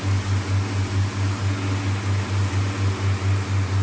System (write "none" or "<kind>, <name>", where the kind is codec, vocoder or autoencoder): none